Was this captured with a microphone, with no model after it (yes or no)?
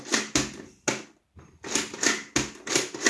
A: yes